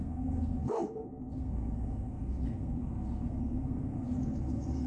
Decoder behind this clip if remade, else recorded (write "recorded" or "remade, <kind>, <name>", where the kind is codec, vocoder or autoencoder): remade, codec, SNAC